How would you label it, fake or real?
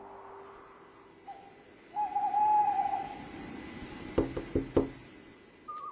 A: real